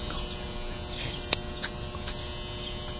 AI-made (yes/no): no